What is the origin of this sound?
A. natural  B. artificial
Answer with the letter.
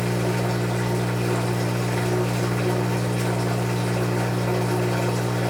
A